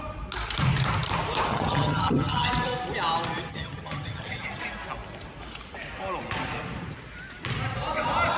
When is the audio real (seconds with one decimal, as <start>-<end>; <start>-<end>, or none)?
0.0-1.5; 2.5-3.5; 4.6-8.4